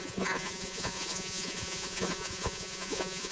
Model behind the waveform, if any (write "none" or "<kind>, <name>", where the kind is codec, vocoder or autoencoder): vocoder, Vocos